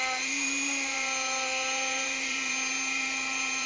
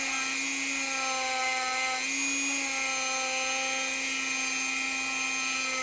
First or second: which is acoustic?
second